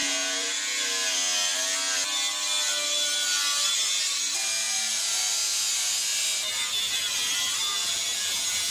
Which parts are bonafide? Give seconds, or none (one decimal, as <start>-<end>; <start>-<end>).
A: 0.6-7.8